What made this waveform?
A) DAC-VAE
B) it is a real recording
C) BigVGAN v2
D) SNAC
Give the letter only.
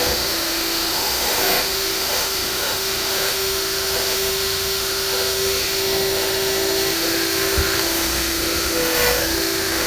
A